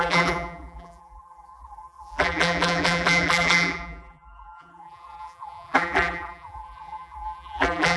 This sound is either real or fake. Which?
fake